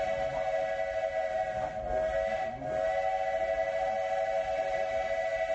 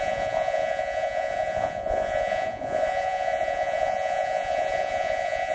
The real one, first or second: first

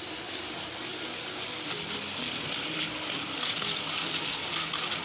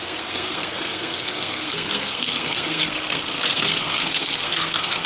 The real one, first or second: first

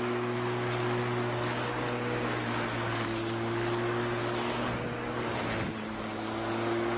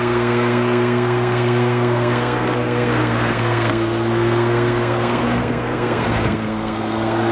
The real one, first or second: first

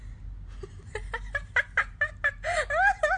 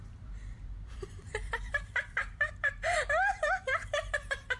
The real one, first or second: first